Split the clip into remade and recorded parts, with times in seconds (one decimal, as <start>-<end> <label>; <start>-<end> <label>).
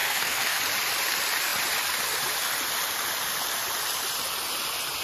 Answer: 0.0-0.6 remade; 0.6-5.0 recorded